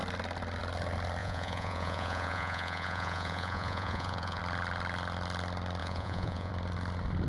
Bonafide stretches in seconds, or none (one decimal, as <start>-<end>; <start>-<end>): 0.0-1.2; 4.4-5.8; 6.5-7.3